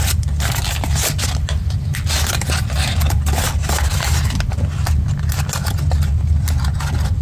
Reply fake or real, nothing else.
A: real